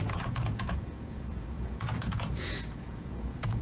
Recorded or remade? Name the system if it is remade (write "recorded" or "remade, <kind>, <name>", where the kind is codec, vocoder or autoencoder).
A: remade, vocoder, Vocos